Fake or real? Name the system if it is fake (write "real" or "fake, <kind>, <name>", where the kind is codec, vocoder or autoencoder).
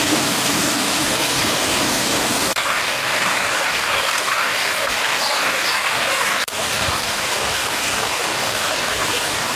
fake, codec, DAC